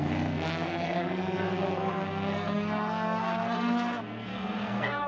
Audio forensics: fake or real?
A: fake